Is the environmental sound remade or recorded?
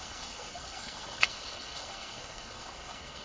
remade